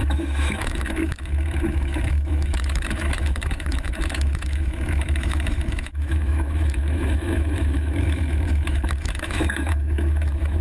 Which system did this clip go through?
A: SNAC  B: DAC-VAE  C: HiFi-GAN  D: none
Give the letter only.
B